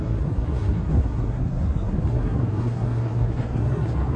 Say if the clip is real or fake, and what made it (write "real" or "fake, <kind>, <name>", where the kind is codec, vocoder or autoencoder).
fake, codec, SNAC